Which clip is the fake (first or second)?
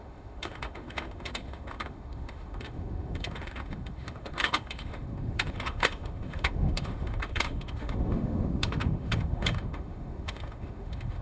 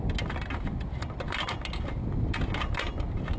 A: first